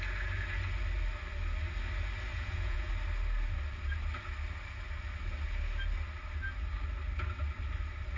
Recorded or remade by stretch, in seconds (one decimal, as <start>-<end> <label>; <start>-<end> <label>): 0.0-2.3 recorded; 2.3-2.9 remade; 2.9-8.2 recorded